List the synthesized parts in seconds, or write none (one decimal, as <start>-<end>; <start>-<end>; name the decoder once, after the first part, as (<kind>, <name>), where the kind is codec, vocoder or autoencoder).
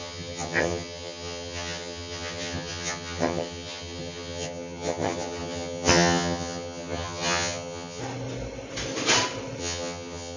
0.0-8.0 (vocoder, HiFi-GAN); 9.6-10.4